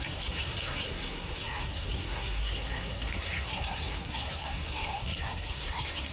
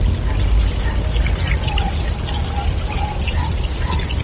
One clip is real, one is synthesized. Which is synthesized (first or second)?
first